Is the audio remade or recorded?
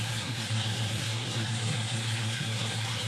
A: remade